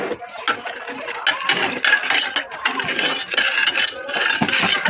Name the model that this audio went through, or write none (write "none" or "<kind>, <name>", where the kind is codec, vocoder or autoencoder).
none